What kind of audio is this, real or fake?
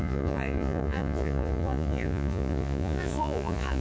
fake